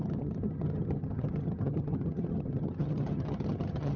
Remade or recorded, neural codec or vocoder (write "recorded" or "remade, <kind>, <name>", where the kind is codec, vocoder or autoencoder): remade, vocoder, HiFi-GAN